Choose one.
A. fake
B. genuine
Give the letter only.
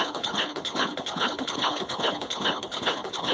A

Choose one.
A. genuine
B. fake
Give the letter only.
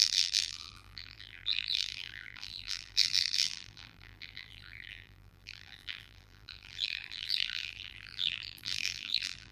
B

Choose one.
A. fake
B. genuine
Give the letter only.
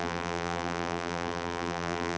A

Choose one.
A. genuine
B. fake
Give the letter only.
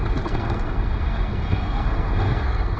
B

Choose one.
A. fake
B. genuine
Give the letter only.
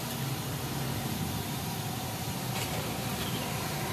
B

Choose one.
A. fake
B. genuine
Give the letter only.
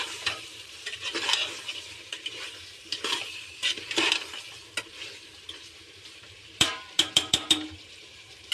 A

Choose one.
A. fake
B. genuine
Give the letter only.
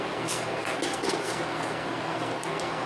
A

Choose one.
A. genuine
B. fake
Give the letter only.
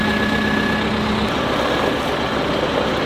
A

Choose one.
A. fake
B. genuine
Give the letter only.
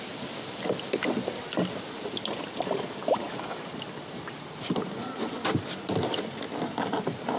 B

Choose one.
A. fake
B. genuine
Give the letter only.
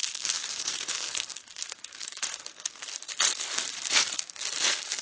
A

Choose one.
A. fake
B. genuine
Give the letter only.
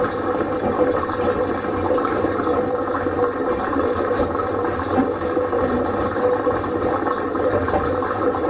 A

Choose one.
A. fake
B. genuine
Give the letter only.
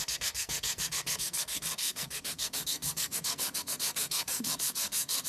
A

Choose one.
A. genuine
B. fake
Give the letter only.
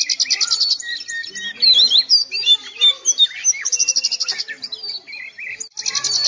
A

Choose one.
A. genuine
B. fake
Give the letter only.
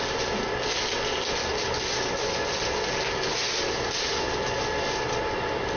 A